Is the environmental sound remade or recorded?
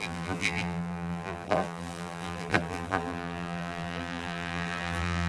remade